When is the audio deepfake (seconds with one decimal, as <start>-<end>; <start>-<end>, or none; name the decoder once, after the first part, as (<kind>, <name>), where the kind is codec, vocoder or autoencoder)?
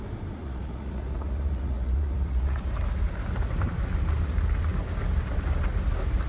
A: 0.4-2.6 (vocoder, Vocos)